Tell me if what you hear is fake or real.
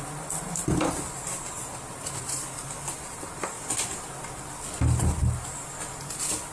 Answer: real